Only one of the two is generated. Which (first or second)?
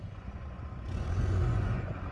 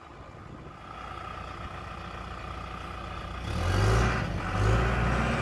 first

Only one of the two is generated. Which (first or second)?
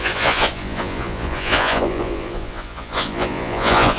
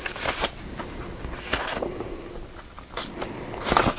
first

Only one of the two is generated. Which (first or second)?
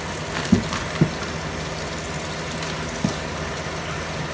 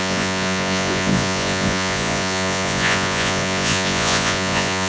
second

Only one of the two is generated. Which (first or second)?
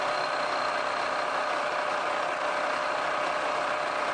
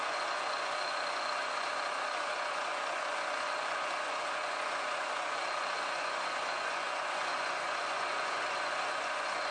second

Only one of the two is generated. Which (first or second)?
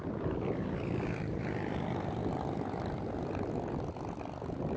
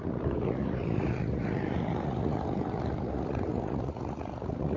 second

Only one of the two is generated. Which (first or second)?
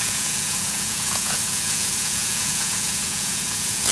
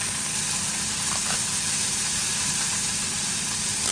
first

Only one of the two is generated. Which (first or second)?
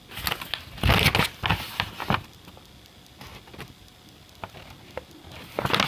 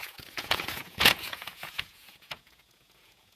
second